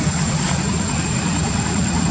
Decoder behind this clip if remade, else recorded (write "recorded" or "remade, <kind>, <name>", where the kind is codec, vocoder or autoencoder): remade, vocoder, Vocos